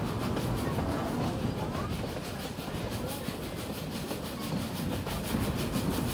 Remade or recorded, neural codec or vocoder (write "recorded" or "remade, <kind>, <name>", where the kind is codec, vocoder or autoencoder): recorded